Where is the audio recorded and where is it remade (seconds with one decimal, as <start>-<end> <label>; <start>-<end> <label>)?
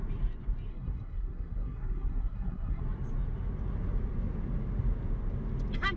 0.0-0.7 recorded; 0.7-2.8 remade; 2.8-6.0 recorded